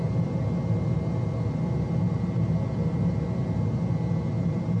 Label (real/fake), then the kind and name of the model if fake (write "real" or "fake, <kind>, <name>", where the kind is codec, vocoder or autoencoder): real